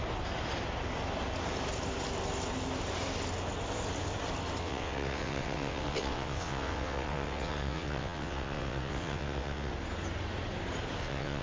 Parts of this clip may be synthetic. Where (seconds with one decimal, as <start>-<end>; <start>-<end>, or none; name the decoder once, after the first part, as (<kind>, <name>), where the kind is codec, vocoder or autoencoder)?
4.6-9.7 (vocoder, WaveNeXt); 11.0-11.4